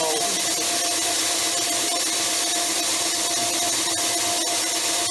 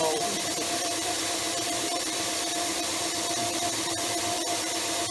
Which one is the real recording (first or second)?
first